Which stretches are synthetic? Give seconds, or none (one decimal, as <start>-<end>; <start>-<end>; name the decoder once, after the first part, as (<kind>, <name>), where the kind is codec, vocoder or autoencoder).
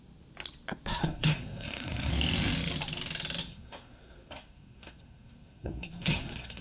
1.0-2.1 (codec, SNAC); 3.5-6.6